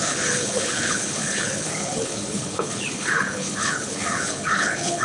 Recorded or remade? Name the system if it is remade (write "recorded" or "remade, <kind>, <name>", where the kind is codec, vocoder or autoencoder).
remade, codec, HILCodec